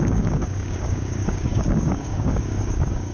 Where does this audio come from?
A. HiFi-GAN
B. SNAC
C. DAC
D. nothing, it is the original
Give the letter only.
C